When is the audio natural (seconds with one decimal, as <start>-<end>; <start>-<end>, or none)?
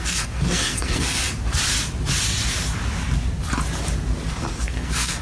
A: 1.4-4.3